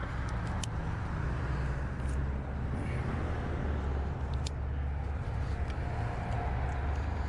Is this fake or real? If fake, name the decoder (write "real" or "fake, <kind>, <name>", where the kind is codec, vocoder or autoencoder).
real